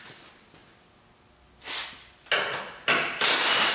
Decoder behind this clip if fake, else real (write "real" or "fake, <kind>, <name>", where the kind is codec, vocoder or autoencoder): real